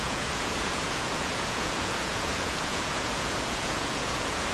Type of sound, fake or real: fake